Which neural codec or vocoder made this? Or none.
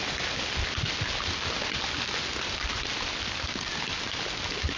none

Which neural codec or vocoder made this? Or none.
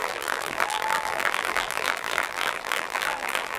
vocoder, BigVGAN v2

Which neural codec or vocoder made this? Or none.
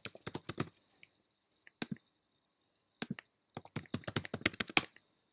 none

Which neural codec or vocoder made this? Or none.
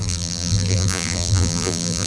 vocoder, BigVGAN v2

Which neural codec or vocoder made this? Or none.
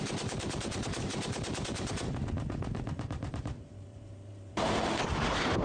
vocoder, BigVGAN v2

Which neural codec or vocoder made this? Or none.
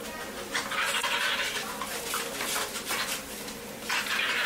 none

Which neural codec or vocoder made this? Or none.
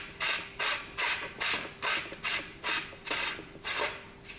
vocoder, BigVGAN v2